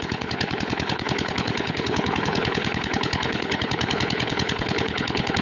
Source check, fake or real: fake